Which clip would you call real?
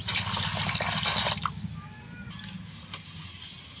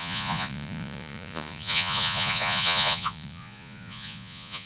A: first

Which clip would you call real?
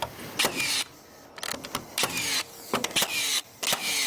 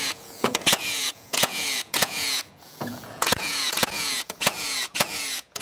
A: first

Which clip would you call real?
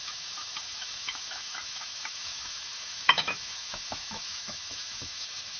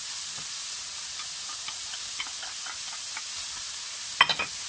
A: second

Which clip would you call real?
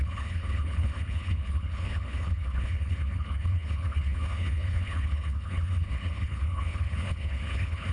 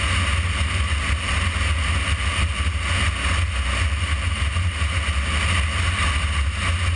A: second